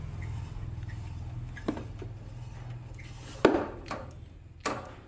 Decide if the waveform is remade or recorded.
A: recorded